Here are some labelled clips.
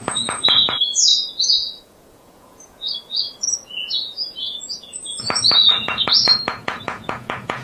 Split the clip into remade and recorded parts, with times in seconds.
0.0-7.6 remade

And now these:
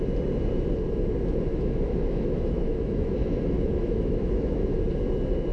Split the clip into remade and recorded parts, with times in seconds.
0.0-1.5 recorded; 1.5-4.8 remade; 4.8-5.5 recorded

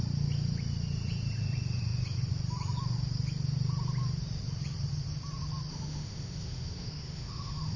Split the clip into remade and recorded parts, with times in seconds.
0.0-5.7 recorded; 5.7-7.8 remade

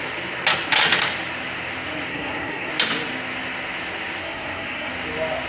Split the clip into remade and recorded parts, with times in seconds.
0.0-2.1 recorded; 2.1-2.7 remade; 2.7-4.2 recorded; 4.2-4.9 remade; 4.9-5.5 recorded

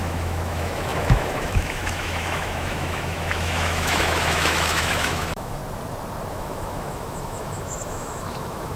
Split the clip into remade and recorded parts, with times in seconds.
0.0-5.6 remade; 5.6-6.3 recorded; 6.3-8.8 remade

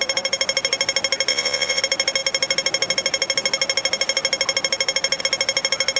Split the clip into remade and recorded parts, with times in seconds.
0.0-1.3 recorded; 1.3-1.8 remade; 1.8-6.0 recorded

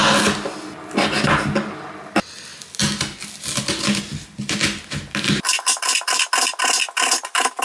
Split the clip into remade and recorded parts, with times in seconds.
0.0-7.6 recorded

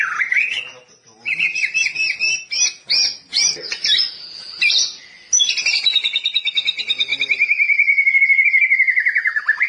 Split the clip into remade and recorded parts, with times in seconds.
0.0-3.3 recorded; 3.3-4.0 remade; 4.0-9.7 recorded